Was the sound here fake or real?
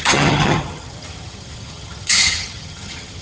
fake